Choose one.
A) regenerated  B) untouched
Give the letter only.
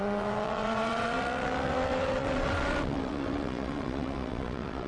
A